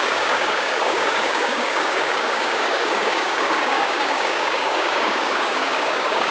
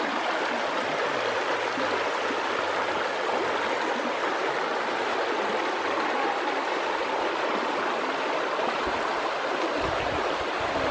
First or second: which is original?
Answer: second